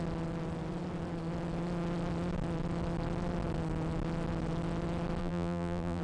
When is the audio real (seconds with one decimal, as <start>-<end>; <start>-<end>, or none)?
0.0-5.2